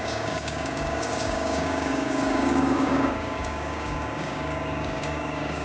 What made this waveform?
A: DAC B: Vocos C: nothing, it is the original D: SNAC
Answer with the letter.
A